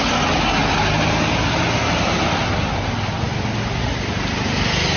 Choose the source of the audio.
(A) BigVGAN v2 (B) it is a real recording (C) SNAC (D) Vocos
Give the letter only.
B